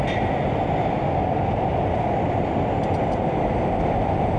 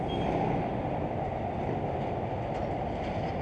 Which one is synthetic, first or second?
first